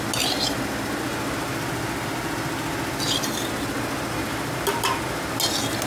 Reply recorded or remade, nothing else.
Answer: recorded